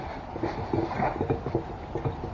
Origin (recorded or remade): recorded